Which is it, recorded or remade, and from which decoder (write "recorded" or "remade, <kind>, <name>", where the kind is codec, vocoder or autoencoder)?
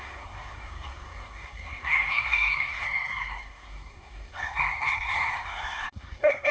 remade, codec, SNAC